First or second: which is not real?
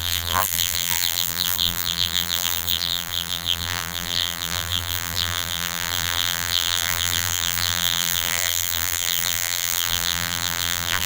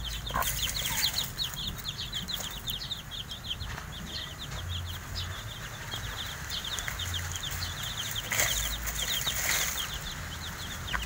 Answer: first